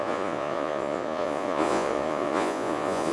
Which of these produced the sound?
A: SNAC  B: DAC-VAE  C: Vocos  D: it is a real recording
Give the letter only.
C